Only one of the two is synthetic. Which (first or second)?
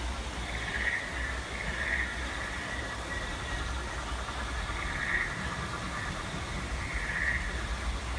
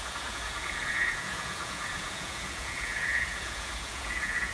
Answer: second